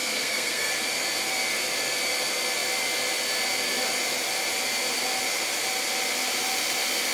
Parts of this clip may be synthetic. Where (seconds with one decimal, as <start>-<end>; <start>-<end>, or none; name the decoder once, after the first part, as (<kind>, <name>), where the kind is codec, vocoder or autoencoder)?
0.0-0.7 (codec, SNAC)